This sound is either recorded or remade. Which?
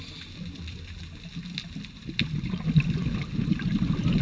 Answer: recorded